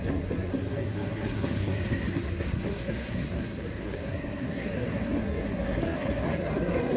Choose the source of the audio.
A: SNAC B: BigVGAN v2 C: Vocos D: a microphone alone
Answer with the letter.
A